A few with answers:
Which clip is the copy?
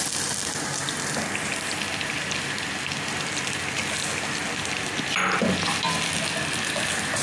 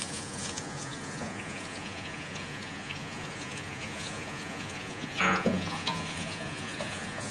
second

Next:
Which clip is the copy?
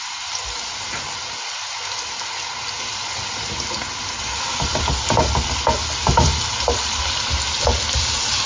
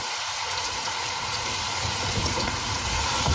second